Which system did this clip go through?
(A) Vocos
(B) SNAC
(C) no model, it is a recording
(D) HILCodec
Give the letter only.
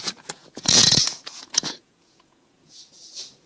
A